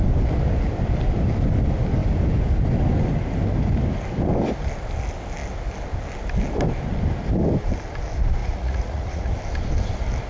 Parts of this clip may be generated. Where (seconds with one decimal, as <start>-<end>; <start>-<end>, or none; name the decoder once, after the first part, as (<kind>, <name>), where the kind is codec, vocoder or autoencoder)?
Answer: 8.4-9.3 (vocoder, Vocos)